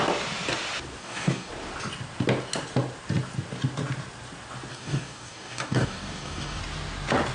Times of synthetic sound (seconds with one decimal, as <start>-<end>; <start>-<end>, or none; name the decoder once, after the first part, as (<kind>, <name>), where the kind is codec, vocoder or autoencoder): 1.0-1.5 (codec, DAC); 4.7-6.6